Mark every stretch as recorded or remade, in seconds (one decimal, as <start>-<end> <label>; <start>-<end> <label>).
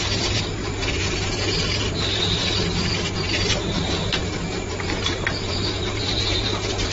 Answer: 0.0-6.9 remade